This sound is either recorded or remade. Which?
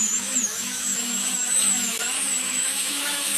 remade